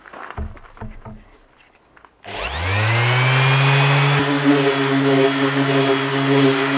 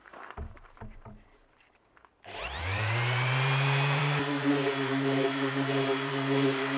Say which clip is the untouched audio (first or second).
first